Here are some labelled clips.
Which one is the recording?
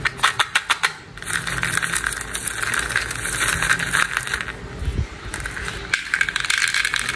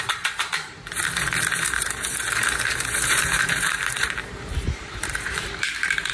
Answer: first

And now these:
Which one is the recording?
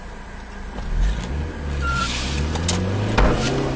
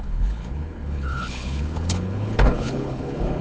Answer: first